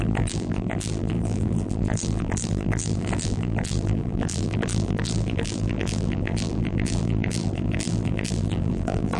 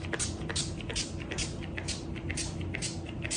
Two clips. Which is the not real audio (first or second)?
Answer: first